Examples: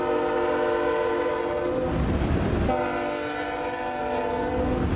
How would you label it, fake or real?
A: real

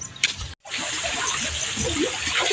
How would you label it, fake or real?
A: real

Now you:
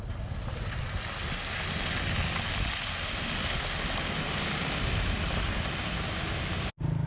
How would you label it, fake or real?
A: real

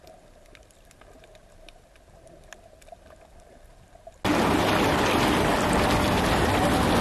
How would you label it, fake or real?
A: real